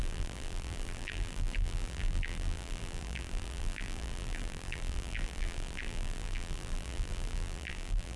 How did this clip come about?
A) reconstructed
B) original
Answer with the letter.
A